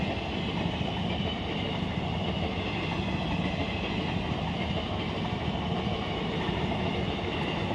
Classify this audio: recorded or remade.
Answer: recorded